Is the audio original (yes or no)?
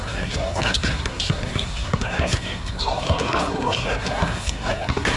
no